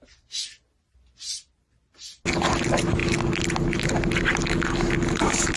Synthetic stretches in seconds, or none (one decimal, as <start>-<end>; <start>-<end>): none